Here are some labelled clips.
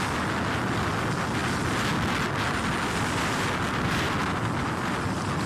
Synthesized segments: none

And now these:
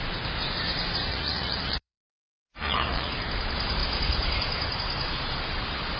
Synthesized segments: 1.1-3.1 (vocoder, Vocos)

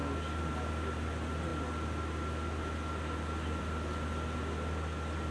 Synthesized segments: none

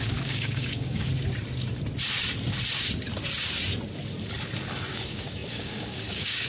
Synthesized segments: 0.0-1.1 (codec, DAC); 4.9-6.5

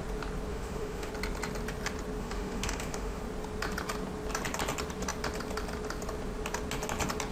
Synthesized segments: 0.5-1.1 (autoencoder, DAC-VAE); 2.2-3.2